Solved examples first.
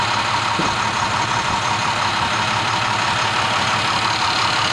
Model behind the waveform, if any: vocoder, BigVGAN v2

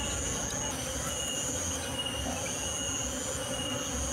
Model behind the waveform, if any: none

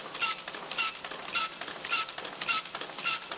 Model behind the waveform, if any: none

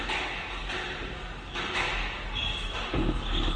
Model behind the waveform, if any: none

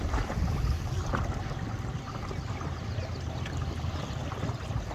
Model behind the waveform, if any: none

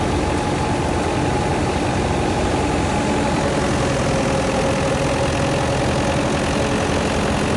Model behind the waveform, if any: none